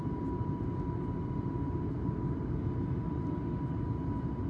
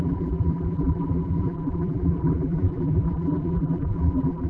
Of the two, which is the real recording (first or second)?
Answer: first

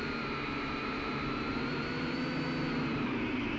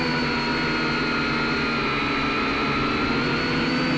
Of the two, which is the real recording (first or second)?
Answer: second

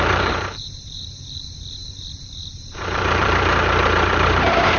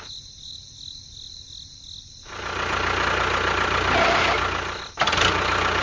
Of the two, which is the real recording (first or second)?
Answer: second